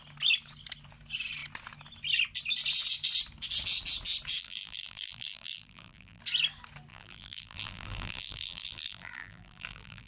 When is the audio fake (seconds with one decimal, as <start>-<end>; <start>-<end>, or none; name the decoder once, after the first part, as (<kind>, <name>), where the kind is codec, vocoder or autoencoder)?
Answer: 4.4-6.2 (vocoder, BigVGAN v2); 6.9-10.1